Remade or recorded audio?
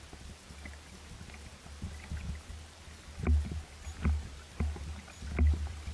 recorded